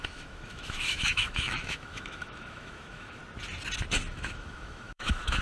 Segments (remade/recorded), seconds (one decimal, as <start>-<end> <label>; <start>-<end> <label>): 0.0-3.2 remade; 3.2-4.1 recorded; 4.1-5.4 remade